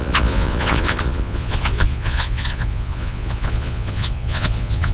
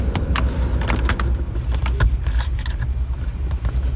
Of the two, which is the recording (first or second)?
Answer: second